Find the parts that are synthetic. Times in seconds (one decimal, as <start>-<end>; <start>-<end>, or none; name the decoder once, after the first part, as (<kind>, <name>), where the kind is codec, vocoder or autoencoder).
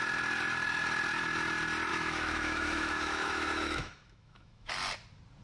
1.9-4.7 (autoencoder, DAC-VAE)